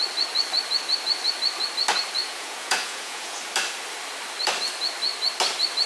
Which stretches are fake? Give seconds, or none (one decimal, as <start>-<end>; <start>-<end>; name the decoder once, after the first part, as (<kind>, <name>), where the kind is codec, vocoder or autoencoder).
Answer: 2.2-3.4 (vocoder, Vocos)